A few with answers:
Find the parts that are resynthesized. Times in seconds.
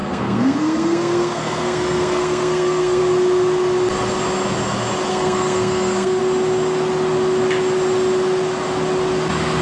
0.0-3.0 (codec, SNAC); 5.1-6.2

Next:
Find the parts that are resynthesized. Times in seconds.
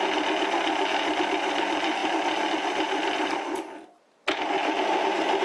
none